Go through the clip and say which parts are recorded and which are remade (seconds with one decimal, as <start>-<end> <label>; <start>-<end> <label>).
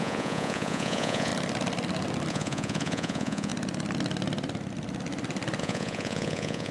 0.0-1.3 remade; 1.3-2.3 recorded; 2.3-3.5 remade; 3.5-5.6 recorded; 5.6-6.7 remade